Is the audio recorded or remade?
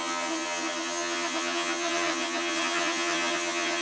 remade